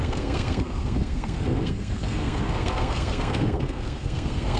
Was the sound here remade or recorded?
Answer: remade